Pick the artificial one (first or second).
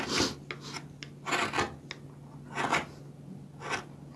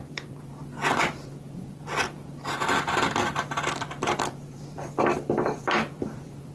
second